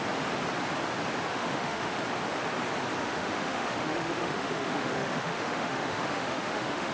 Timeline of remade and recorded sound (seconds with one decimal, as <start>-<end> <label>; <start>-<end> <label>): 0.0-1.3 recorded; 1.3-2.0 remade; 2.0-3.0 recorded; 3.0-6.9 remade